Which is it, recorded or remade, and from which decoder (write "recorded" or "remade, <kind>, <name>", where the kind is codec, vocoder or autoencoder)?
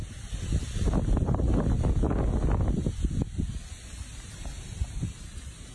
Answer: recorded